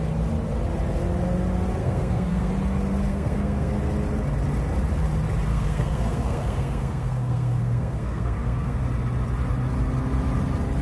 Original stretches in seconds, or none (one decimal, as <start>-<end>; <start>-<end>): 0.0-1.8; 2.5-3.1; 3.7-5.5; 8.8-10.8